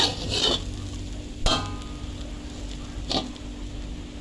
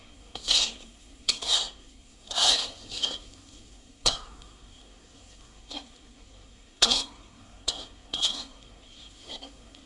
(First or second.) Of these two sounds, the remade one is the second